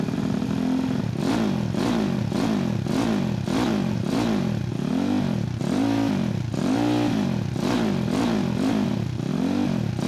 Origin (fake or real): real